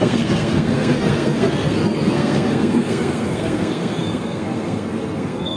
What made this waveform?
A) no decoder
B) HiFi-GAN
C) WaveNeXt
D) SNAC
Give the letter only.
D